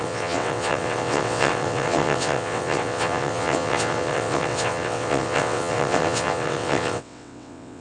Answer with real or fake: fake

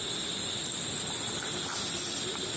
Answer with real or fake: real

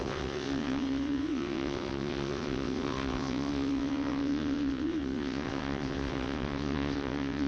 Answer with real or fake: fake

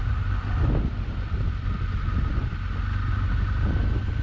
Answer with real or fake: real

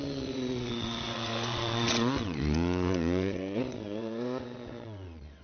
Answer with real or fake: fake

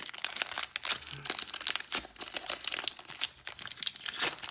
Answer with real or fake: real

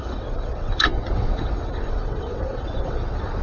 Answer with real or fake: fake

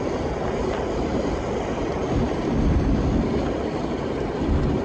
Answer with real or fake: real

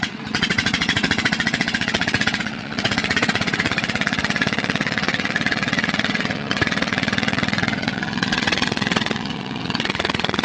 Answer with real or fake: fake